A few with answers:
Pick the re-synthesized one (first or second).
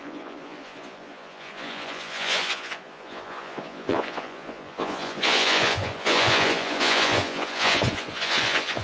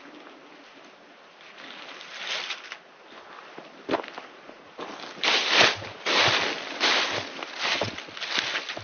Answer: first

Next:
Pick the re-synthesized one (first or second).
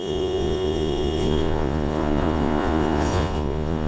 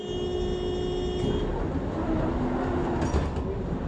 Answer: first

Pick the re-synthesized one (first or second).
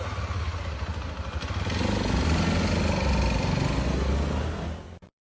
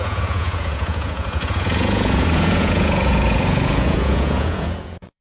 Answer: second